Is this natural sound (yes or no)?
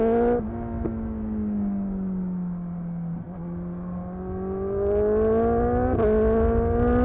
yes